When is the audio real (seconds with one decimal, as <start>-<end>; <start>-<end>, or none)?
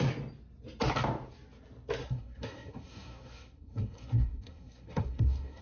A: 0.0-2.0